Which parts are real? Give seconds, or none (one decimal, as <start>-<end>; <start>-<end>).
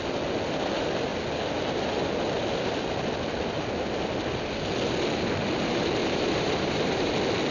0.0-6.0; 7.1-7.5